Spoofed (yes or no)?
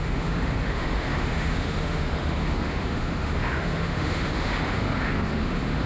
yes